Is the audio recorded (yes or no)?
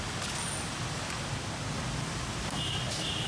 yes